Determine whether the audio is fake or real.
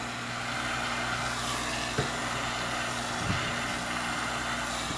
real